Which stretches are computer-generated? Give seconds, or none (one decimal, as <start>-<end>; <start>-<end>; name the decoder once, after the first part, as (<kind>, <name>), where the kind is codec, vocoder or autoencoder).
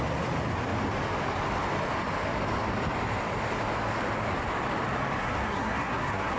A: 5.2-6.4 (codec, SNAC)